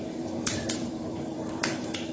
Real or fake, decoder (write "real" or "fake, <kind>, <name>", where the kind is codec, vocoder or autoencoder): fake, vocoder, BigVGAN v2